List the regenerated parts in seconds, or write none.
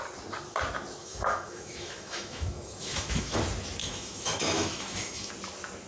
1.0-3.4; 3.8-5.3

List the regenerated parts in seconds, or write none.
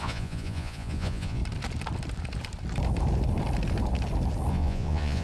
0.0-1.4; 4.5-5.2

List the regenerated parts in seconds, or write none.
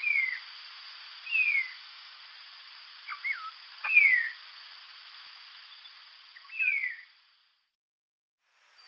1.7-2.2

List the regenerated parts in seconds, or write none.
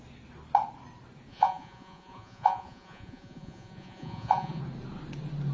1.3-4.6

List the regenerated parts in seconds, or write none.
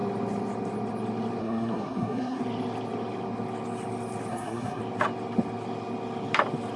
1.4-2.4; 4.3-4.8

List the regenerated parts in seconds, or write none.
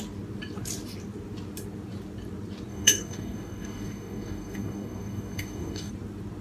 2.7-5.9